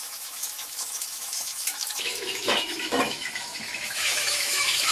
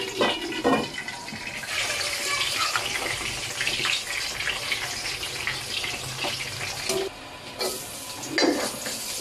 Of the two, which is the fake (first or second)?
first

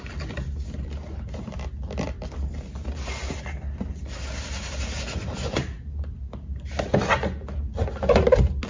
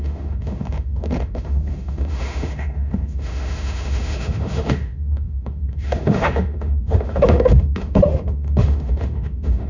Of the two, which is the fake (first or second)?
second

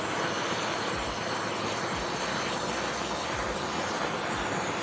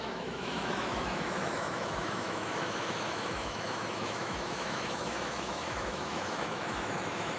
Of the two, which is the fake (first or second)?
second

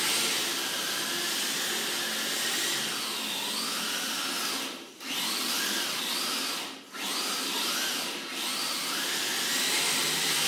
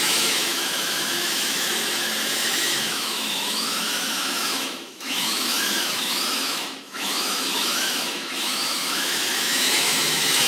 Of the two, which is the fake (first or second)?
second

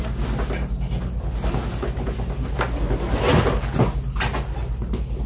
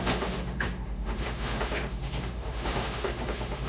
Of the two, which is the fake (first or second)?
second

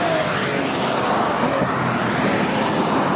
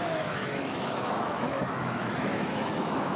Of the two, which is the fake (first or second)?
second